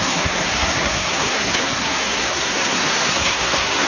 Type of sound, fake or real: fake